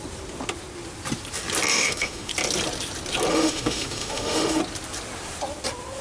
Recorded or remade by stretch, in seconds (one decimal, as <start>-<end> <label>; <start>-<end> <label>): 0.0-1.7 recorded; 1.7-2.3 remade; 2.3-3.3 recorded; 3.3-4.6 remade; 4.6-6.0 recorded